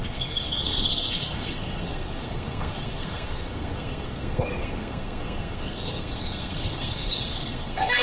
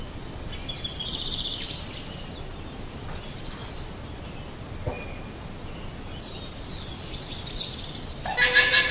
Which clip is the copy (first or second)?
first